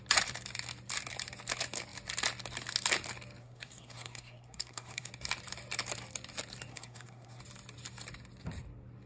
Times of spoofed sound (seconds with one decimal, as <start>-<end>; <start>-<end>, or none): 3.4-5.1; 6.7-7.4